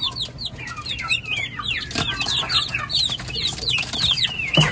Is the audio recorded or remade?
recorded